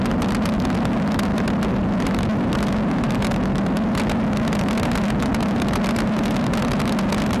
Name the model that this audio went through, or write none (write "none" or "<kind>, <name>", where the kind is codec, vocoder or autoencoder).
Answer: none